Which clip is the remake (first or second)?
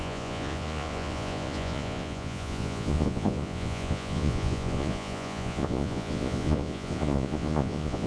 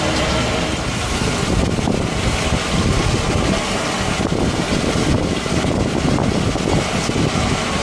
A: first